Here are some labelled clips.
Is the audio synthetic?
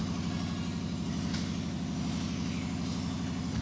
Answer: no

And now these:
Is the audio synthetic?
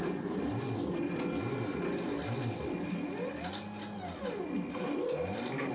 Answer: no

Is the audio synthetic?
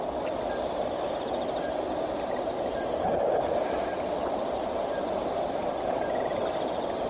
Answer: yes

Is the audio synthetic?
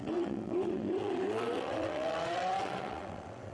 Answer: yes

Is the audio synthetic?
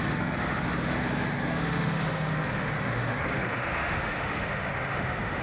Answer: yes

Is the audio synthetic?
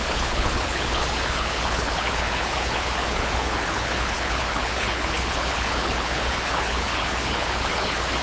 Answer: yes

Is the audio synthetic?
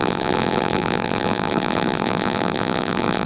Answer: yes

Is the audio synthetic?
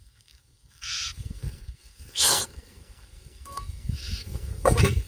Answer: yes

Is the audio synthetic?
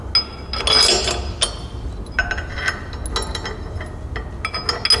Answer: no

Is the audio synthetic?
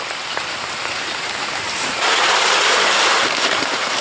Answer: yes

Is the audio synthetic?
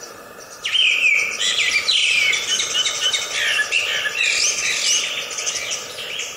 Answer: no